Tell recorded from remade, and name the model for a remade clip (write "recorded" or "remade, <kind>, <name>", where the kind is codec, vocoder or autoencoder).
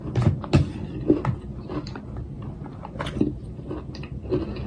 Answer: recorded